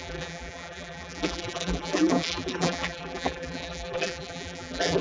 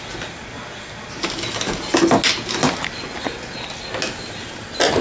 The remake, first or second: first